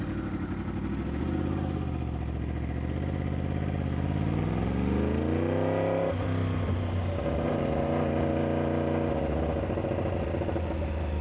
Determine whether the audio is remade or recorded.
recorded